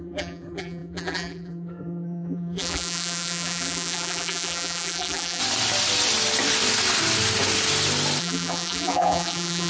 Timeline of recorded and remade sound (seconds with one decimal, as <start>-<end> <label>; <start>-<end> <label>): 0.0-5.4 remade; 5.4-8.2 recorded; 8.2-9.7 remade